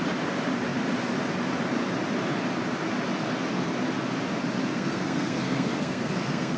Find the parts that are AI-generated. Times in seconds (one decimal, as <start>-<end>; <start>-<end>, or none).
4.7-6.6